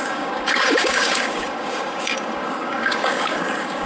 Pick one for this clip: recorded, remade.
remade